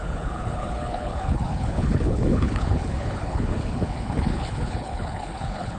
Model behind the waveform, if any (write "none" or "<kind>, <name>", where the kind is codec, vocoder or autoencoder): codec, HILCodec